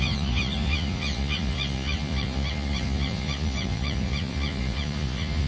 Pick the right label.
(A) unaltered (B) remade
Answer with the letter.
B